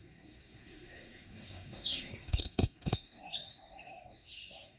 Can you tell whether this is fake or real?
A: fake